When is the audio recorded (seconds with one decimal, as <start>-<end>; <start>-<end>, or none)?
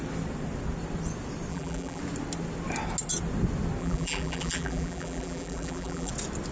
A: 0.0-1.5; 2.0-3.8; 6.1-6.5